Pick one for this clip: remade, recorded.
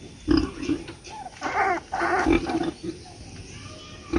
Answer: recorded